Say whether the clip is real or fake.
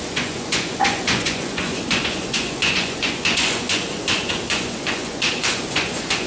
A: fake